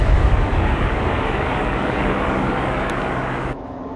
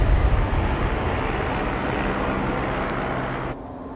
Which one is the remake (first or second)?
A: first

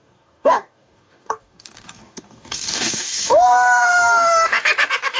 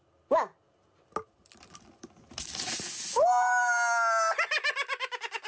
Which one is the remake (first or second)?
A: first